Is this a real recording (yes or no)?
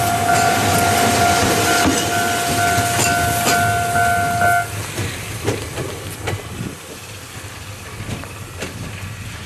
yes